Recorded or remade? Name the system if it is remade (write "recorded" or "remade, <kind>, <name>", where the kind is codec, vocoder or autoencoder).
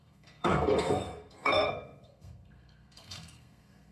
remade, codec, SNAC